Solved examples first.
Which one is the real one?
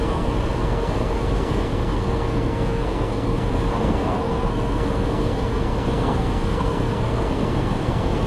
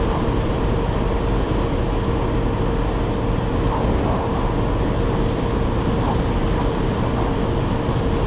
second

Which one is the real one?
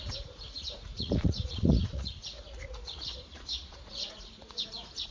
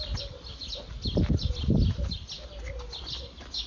second